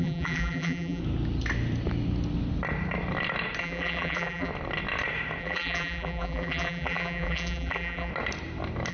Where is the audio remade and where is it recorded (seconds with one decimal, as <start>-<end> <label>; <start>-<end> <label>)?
0.0-1.0 remade; 1.0-3.6 recorded; 3.6-4.5 remade; 4.5-5.4 recorded; 5.4-8.1 remade; 8.1-8.9 recorded